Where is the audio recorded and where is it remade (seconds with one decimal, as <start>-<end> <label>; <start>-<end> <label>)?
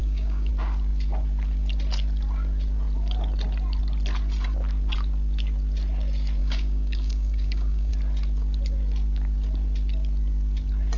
0.0-0.5 remade; 0.5-6.4 recorded; 6.4-7.9 remade; 7.9-11.0 recorded